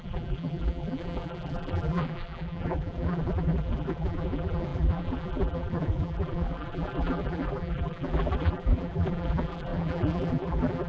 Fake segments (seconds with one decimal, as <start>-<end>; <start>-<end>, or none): 0.0-10.9